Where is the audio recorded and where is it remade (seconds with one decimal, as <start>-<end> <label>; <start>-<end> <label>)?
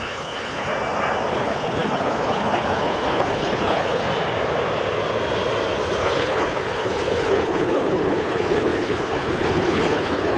0.0-0.7 remade; 0.7-1.3 recorded; 1.3-4.0 remade; 4.0-6.0 recorded; 6.0-10.4 remade